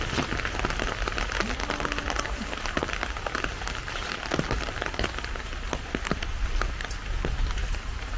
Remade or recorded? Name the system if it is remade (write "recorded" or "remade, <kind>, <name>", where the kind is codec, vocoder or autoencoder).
recorded